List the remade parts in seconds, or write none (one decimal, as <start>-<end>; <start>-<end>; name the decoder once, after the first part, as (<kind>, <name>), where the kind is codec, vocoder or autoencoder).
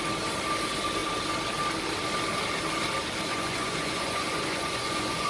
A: 3.3-5.3 (vocoder, Vocos)